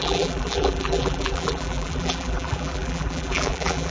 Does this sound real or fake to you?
fake